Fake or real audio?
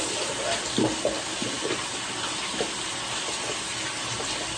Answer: real